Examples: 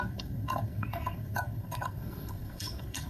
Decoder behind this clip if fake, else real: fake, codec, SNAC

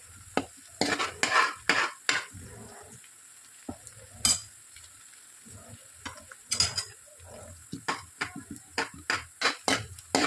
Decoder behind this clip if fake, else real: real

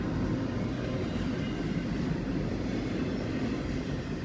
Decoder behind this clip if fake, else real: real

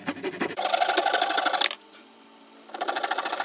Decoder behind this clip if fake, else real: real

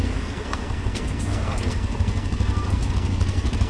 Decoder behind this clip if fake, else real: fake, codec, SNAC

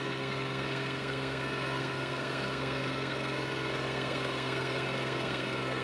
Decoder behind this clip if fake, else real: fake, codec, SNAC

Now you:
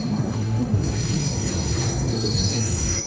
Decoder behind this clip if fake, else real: fake, codec, SNAC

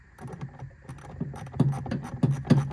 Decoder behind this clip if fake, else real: real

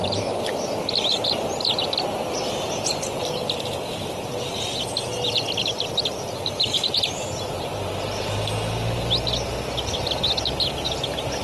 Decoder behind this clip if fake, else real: real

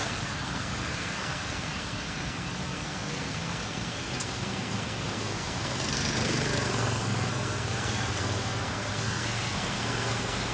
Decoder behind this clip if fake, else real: fake, codec, SNAC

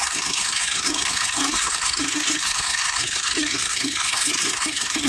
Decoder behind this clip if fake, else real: fake, codec, SNAC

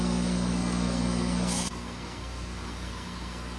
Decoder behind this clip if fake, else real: fake, codec, SNAC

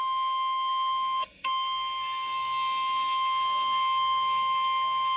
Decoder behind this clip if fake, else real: fake, codec, SNAC